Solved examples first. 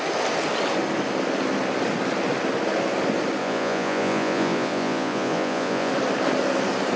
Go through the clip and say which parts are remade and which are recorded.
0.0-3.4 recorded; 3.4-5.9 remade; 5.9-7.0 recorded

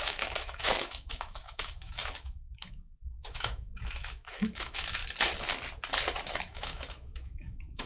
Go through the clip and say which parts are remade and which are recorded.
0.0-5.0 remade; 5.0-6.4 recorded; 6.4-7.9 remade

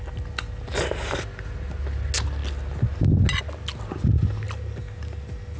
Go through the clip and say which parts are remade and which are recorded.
0.0-5.6 recorded

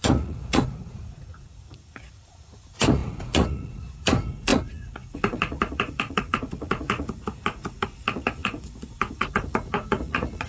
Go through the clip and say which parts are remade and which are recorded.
0.0-10.5 remade

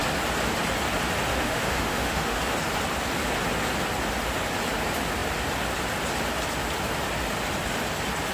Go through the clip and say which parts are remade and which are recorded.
0.0-1.3 recorded; 1.3-2.4 remade; 2.4-8.3 recorded

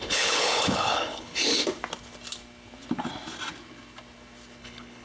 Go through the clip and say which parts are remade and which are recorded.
0.0-1.6 remade; 1.6-4.6 recorded; 4.6-5.0 remade